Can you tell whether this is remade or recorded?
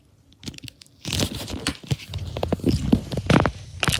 recorded